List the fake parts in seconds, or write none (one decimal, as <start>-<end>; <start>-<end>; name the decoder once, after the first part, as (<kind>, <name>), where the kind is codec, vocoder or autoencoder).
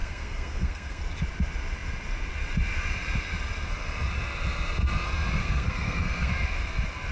0.0-1.0 (codec, SNAC); 5.4-6.3